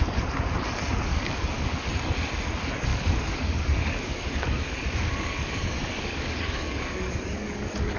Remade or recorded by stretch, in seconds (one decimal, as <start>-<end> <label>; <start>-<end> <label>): 0.0-1.1 recorded; 1.1-1.9 remade; 1.9-2.9 recorded; 2.9-8.0 remade